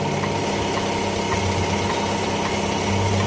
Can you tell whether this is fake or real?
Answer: real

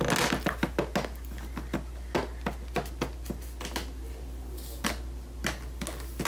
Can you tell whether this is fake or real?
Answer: real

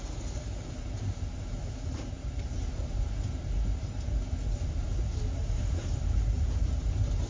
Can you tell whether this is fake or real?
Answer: fake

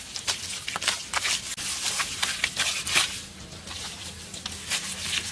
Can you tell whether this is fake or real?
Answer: real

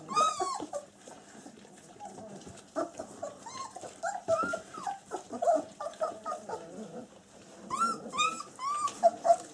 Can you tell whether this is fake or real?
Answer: fake